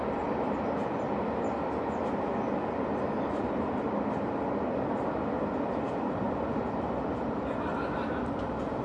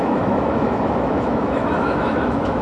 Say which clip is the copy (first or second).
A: second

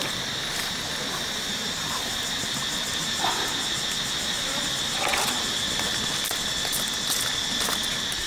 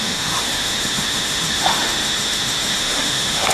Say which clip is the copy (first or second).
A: second